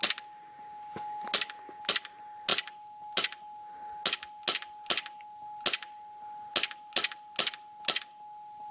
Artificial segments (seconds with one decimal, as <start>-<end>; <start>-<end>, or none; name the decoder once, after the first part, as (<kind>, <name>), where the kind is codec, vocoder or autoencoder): none